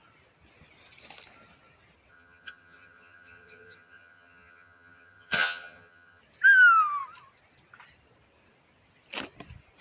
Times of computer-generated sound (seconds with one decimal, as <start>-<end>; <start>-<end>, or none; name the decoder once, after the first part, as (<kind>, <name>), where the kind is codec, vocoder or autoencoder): 2.1-6.2 (vocoder, HiFi-GAN)